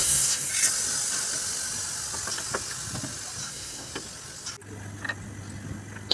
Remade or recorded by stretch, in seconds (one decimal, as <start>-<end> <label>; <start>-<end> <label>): 0.0-0.5 remade; 0.5-3.4 recorded; 3.4-3.9 remade; 3.9-6.1 recorded

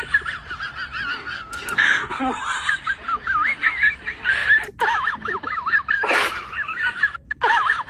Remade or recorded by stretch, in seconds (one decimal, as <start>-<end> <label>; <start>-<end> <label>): 0.0-1.2 recorded; 1.2-2.2 remade; 2.2-7.9 recorded

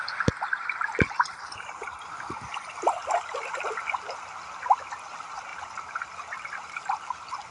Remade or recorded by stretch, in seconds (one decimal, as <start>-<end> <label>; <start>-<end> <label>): 0.0-7.5 recorded

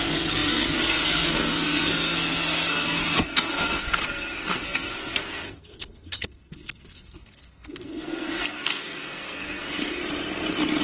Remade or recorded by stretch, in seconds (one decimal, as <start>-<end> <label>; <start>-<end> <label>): 0.0-10.0 remade; 10.0-10.8 recorded

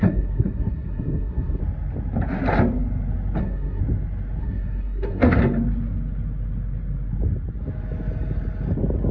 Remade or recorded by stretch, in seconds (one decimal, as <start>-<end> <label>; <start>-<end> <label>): 0.0-1.6 remade; 1.6-3.4 recorded; 3.4-3.8 remade; 3.8-4.4 recorded; 4.4-5.4 remade; 5.4-9.1 recorded

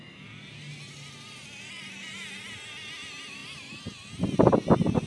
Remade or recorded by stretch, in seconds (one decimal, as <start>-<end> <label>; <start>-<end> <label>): 0.0-5.1 recorded

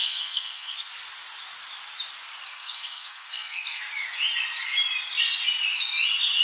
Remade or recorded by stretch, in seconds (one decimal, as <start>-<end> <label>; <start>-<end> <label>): 0.0-0.9 remade; 0.9-2.5 recorded; 2.5-3.8 remade; 3.8-6.4 recorded

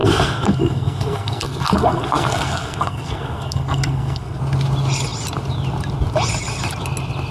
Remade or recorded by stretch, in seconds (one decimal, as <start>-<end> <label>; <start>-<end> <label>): 0.0-4.4 remade; 4.4-7.3 recorded